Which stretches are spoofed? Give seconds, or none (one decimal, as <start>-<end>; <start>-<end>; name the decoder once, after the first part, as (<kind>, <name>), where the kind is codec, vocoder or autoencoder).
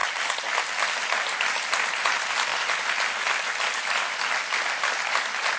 none